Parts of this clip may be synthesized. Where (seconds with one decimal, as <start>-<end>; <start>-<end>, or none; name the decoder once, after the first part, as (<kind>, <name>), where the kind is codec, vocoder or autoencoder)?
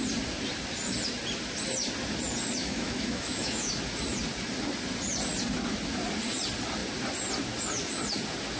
2.6-3.7 (autoencoder, DAC-VAE)